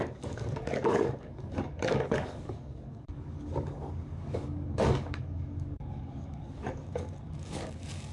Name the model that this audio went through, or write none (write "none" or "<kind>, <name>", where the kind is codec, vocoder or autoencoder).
codec, DAC